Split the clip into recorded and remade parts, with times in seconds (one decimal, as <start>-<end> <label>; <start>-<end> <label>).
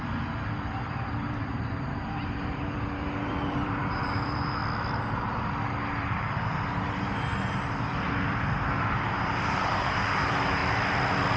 0.0-4.6 remade; 4.6-6.0 recorded; 6.0-7.3 remade; 7.3-9.0 recorded; 9.0-10.6 remade; 10.6-11.4 recorded